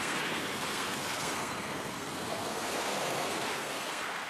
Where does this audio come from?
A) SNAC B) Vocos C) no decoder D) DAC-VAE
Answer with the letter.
A